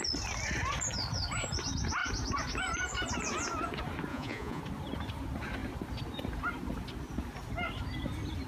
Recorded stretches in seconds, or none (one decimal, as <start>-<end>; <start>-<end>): 0.0-4.1; 4.6-8.5